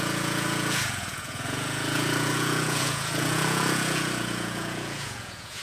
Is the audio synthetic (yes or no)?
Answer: yes